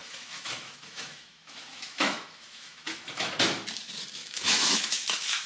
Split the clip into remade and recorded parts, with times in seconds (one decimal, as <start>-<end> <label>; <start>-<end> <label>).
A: 0.0-3.3 remade; 3.3-4.2 recorded; 4.2-5.5 remade